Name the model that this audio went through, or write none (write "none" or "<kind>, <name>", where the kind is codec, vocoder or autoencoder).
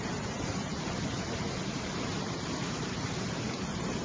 vocoder, BigVGAN v2